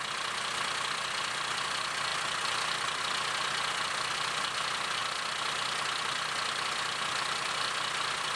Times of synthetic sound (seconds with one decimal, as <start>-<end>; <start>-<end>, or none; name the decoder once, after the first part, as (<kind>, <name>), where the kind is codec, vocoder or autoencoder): none